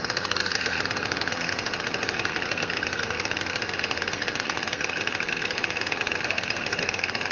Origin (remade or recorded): remade